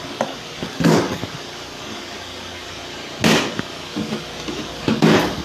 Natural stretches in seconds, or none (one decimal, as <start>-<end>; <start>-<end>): 2.8-3.5